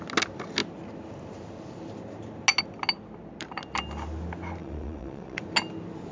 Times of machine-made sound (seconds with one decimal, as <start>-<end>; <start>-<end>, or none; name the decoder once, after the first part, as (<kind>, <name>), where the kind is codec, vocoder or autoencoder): 4.6-5.4 (vocoder, WaveNeXt)